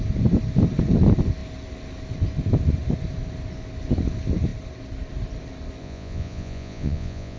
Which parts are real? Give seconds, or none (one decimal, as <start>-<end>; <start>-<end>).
0.0-5.8